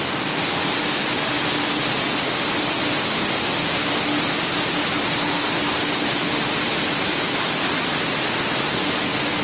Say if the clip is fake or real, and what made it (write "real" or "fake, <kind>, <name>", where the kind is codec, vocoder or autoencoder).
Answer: real